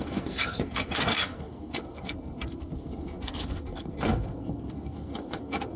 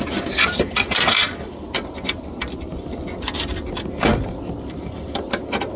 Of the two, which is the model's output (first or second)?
first